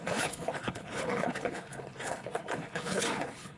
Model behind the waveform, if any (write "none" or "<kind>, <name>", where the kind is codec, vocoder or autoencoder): codec, HILCodec